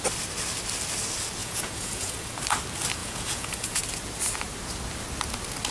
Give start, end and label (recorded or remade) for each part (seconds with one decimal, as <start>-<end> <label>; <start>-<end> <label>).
0.0-1.4 recorded; 1.4-2.3 remade; 2.3-3.0 recorded; 3.0-3.8 remade; 3.8-5.7 recorded